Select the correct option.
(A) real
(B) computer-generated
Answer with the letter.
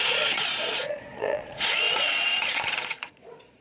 B